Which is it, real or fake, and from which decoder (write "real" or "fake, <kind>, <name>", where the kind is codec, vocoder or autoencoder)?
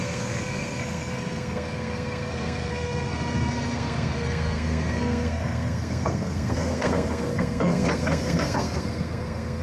fake, codec, SNAC